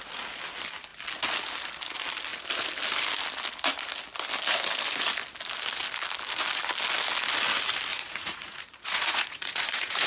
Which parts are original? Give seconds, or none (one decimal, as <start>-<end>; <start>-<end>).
0.0-7.9